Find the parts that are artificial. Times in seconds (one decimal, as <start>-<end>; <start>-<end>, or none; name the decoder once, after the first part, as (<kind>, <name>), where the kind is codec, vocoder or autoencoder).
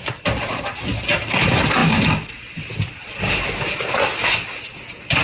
none